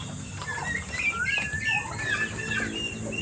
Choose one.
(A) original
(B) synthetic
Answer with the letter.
A